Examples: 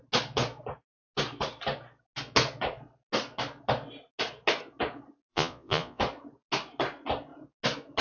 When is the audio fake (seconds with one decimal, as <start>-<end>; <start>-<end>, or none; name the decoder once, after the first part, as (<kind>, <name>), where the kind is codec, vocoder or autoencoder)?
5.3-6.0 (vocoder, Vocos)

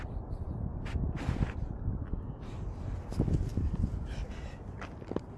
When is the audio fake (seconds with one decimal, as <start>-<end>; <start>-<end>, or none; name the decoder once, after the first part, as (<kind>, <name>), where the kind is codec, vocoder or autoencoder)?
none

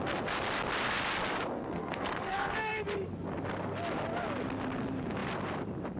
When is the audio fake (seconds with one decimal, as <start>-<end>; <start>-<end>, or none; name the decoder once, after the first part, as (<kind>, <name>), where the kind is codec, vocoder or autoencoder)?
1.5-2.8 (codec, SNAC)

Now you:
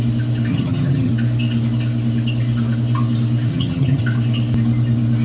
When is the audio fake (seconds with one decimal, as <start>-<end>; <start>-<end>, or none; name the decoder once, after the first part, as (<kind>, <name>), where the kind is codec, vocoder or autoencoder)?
0.5-1.1 (vocoder, HiFi-GAN); 3.5-4.0

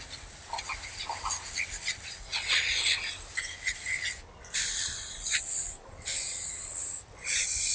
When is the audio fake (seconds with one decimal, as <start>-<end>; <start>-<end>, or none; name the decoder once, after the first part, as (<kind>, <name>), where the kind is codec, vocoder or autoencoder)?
none

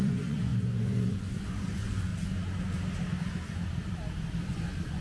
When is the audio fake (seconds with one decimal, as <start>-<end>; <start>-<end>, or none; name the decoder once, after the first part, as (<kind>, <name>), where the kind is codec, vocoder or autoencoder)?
0.0-2.1 (vocoder, Vocos); 4.5-5.0